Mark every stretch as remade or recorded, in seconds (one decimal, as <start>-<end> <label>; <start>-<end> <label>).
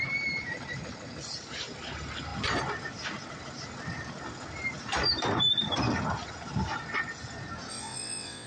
0.0-7.7 recorded; 7.7-8.5 remade